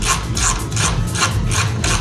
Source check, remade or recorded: recorded